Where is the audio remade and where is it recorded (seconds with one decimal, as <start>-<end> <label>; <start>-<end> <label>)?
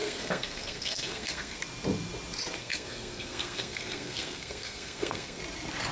0.0-1.6 remade; 1.6-2.6 recorded; 2.6-5.4 remade; 5.4-5.9 recorded